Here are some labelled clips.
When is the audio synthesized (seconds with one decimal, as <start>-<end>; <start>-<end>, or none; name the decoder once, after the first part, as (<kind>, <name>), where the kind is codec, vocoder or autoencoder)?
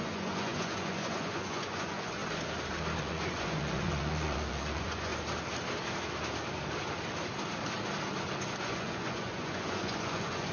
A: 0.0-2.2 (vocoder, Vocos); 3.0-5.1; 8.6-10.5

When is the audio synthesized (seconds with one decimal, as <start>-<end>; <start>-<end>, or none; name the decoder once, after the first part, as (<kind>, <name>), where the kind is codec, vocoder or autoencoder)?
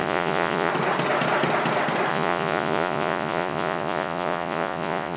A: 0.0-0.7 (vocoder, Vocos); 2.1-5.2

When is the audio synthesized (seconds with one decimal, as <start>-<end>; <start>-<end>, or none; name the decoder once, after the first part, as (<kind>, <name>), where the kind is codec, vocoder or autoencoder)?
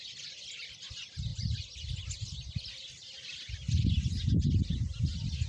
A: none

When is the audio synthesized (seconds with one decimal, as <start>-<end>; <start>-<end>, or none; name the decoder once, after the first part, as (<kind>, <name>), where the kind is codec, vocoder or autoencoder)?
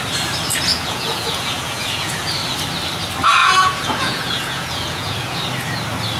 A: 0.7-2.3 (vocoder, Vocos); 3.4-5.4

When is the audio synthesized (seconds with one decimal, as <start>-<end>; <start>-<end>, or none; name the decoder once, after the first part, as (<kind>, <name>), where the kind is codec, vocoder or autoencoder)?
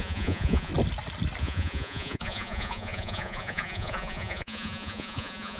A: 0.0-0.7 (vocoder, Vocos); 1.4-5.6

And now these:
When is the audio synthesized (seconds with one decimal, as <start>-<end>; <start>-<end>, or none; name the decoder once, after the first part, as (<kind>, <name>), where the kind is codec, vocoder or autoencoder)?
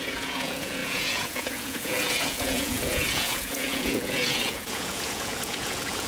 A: 0.0-6.1 (vocoder, Vocos)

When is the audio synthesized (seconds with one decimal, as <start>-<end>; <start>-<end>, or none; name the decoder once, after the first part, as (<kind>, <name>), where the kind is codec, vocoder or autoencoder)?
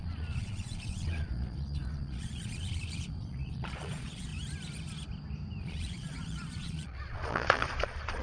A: 0.0-4.3 (vocoder, Vocos); 5.6-8.2